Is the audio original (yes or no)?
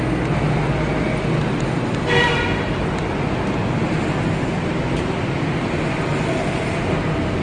yes